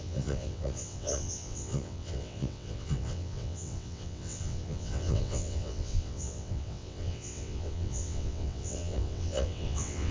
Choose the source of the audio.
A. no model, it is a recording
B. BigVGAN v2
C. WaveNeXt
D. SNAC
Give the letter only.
C